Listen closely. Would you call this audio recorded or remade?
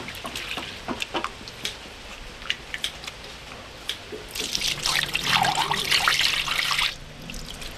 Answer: recorded